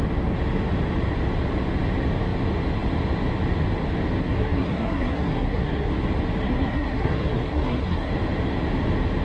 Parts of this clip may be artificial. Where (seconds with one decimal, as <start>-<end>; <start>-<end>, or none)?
4.2-5.9; 6.4-8.1

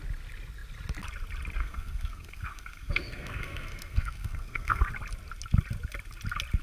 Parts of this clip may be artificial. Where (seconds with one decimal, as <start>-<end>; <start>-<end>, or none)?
1.6-4.9

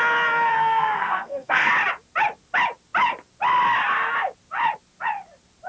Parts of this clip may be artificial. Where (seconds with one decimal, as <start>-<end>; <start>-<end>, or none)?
0.5-1.7

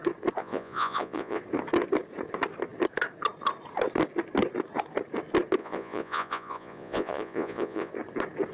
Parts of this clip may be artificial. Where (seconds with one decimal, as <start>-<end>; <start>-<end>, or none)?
0.4-1.4; 5.6-7.9

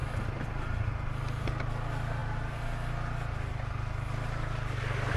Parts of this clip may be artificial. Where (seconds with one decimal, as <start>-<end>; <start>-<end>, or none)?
none

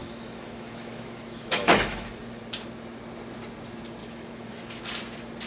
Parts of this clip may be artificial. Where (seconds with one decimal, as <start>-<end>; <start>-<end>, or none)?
0.0-2.4; 4.0-4.8

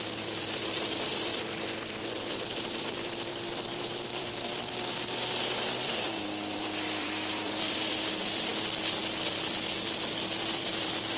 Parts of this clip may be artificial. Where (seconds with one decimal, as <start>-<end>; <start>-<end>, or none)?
0.0-8.5; 9.4-11.2